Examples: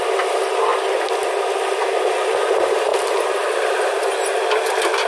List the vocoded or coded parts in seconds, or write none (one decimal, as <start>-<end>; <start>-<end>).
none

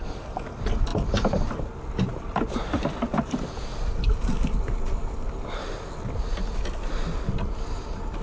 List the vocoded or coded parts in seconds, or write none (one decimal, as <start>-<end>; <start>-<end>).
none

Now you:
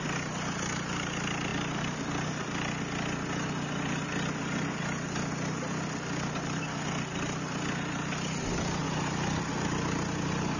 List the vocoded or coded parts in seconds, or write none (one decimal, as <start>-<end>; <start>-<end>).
none

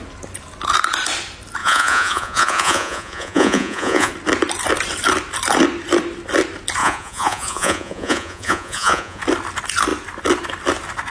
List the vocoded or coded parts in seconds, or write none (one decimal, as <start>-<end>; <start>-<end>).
1.6-4.1; 6.8-9.2

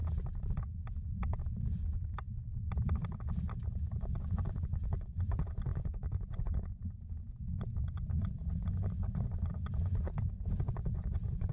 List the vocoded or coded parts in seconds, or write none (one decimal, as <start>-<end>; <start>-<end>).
4.0-11.5